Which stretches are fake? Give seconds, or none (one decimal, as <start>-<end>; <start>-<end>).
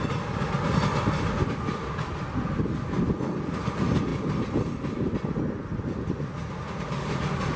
none